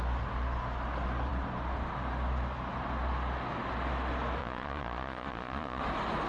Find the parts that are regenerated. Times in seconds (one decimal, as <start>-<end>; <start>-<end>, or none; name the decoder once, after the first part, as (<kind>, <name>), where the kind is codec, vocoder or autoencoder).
4.4-5.8 (vocoder, Vocos)